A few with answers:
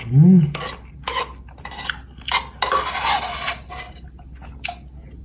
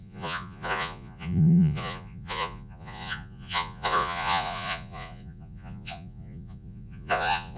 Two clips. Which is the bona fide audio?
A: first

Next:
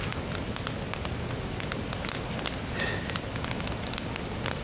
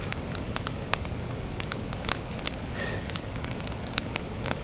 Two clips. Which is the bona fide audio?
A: first